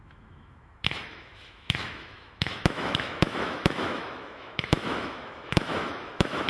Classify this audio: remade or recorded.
remade